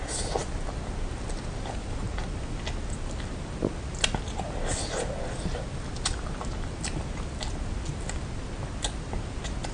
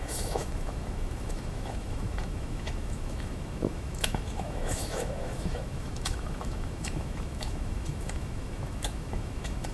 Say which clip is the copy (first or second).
second